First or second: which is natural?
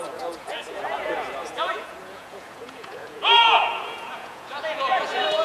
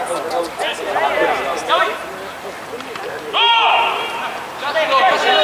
second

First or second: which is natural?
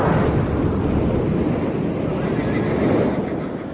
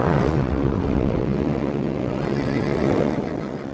first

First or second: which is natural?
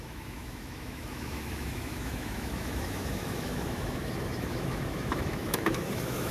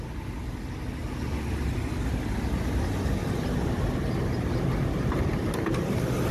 second